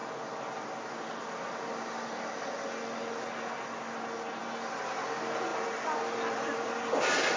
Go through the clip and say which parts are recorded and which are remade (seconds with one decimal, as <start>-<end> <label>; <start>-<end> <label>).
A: 0.0-5.5 recorded; 5.5-6.9 remade; 6.9-7.4 recorded